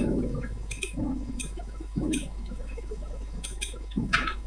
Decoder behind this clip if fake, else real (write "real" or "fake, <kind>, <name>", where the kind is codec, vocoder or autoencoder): fake, autoencoder, DAC-VAE